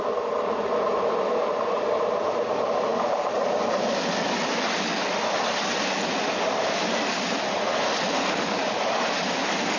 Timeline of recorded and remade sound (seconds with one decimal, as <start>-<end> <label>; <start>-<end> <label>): 0.0-9.8 recorded